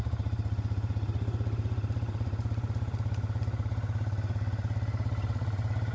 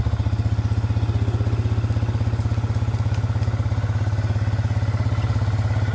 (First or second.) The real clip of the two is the second